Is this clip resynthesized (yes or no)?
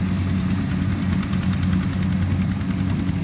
no